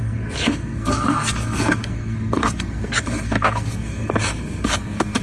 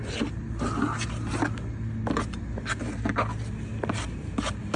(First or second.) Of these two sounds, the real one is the second